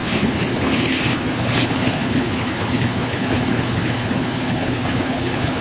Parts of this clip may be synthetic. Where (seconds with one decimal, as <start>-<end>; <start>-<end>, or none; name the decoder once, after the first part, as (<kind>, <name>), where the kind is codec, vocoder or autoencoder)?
0.0-5.6 (codec, HILCodec)